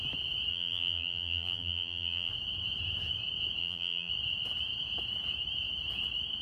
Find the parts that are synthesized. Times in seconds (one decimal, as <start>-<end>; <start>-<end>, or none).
0.5-2.3; 3.6-4.1